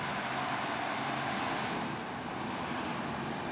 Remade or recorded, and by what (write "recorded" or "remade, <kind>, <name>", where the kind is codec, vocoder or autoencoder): recorded